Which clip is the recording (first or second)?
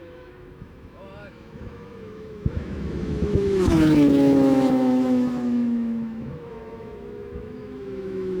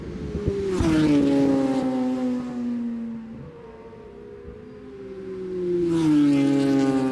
second